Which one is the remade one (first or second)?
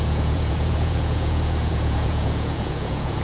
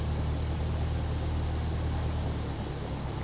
first